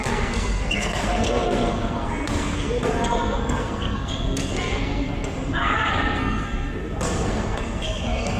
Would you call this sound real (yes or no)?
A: no